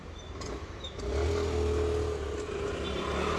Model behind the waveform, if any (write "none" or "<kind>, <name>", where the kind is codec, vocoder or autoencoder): none